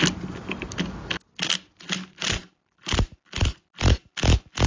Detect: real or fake real